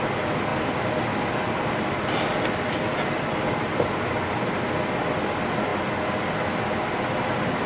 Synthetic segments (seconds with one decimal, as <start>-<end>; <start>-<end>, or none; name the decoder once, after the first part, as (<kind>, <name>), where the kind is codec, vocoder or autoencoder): none